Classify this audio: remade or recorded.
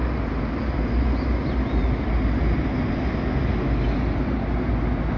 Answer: recorded